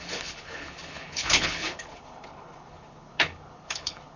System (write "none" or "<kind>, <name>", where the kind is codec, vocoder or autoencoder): codec, HILCodec